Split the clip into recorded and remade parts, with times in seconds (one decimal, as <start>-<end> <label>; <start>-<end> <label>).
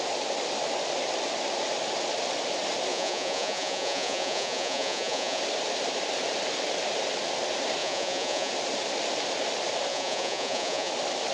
0.0-2.9 recorded; 2.9-5.4 remade; 5.4-7.8 recorded; 7.8-8.5 remade; 8.5-9.9 recorded; 9.9-10.9 remade; 10.9-11.3 recorded